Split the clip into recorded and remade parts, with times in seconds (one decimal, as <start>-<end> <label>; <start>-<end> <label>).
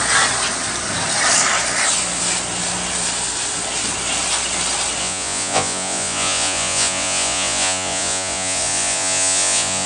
0.0-5.0 recorded; 5.0-9.9 remade